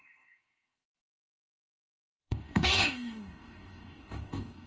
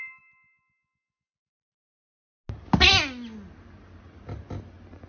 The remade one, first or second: first